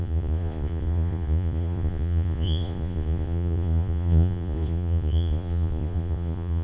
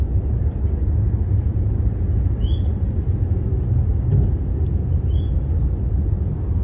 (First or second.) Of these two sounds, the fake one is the first